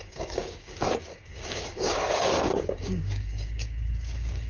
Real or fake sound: fake